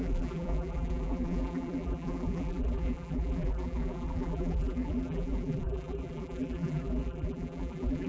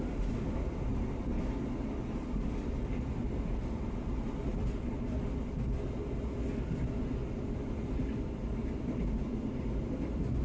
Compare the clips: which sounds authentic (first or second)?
second